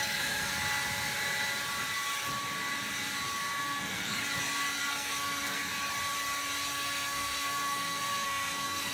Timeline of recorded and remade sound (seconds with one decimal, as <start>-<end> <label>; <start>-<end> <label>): 0.0-0.5 remade; 0.5-3.6 recorded; 3.6-4.2 remade; 4.2-4.8 recorded; 4.8-5.7 remade; 5.7-6.7 recorded; 6.7-8.9 remade